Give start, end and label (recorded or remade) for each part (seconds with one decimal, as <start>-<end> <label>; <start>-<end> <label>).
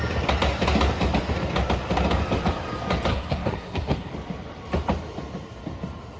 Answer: 0.0-3.1 recorded; 3.1-4.1 remade; 4.1-6.2 recorded